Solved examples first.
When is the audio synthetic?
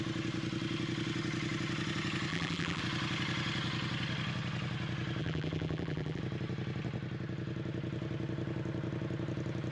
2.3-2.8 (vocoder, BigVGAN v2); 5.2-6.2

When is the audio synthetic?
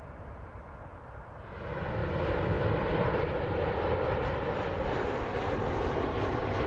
2.0-6.0 (vocoder, BigVGAN v2)